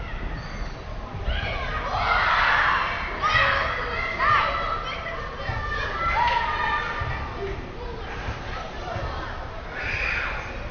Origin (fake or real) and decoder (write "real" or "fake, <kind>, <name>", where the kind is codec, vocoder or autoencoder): real